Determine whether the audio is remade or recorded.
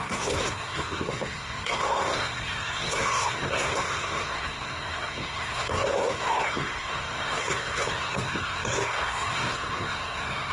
remade